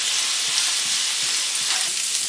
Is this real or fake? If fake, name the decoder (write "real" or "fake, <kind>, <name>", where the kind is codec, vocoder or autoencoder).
real